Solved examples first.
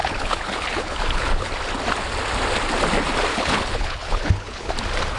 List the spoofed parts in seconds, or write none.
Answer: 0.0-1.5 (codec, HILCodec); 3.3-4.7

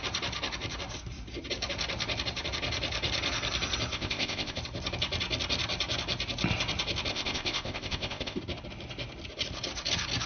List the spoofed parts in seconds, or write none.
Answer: 3.9-4.6 (codec, ZipCodec); 7.1-8.4

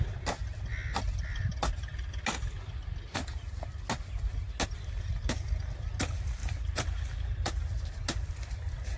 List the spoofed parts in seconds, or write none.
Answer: 6.4-7.6 (vocoder, BigVGAN v2)

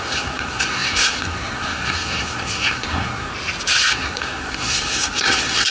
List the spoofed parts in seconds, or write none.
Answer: 0.0-3.3 (codec, SNAC); 3.9-5.7

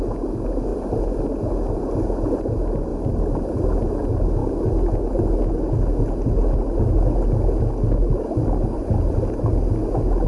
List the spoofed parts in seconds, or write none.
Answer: 0.7-1.4 (vocoder, BigVGAN v2)

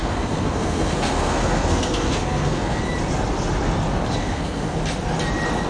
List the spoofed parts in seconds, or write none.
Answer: 0.0-2.8 (codec, SNAC); 4.2-4.8

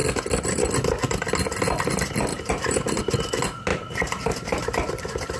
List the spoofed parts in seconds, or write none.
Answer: 2.3-3.0 (vocoder, BigVGAN v2); 3.7-5.0